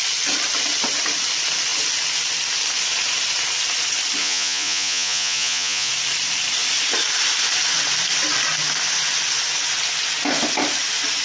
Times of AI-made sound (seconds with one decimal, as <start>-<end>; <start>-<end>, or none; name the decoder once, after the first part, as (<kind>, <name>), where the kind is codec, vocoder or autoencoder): 4.2-5.9 (vocoder, Vocos)